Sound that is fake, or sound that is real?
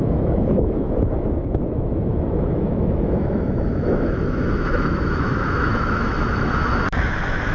fake